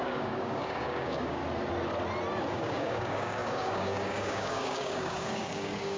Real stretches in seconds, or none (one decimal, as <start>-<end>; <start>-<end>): 1.4-2.5

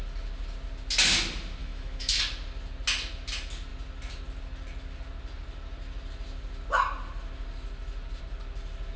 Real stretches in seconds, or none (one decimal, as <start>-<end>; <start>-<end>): 0.0-1.6; 2.2-9.0

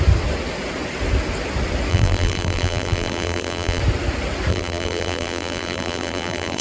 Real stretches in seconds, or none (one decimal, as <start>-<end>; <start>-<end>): 0.0-1.9; 3.8-4.5

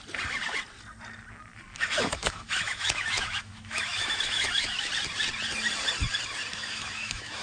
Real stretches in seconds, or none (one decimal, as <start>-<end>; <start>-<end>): 0.0-1.7; 4.9-6.5

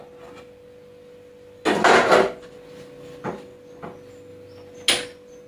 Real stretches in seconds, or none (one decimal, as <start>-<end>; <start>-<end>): 0.0-5.5

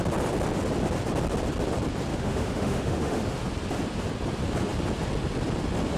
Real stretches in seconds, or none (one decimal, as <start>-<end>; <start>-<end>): 0.0-2.1; 3.2-6.0